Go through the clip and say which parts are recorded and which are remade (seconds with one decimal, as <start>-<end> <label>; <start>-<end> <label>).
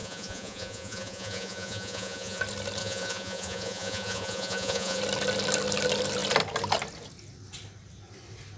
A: 0.0-2.4 remade; 2.4-2.8 recorded; 2.8-5.0 remade; 5.0-8.6 recorded